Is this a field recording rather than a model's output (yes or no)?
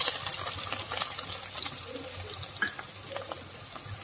yes